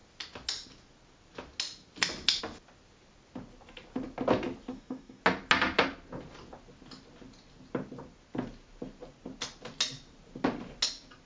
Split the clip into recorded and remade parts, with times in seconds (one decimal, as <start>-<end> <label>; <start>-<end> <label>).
0.0-4.7 recorded; 4.7-5.2 remade; 5.2-11.3 recorded